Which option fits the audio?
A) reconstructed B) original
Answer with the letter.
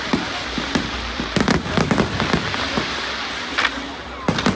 B